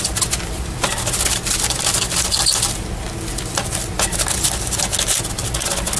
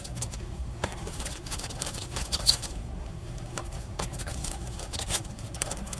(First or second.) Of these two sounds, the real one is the first